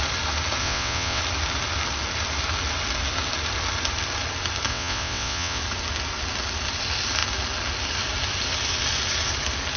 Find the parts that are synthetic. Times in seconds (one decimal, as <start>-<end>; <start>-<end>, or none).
0.6-1.2; 4.7-5.6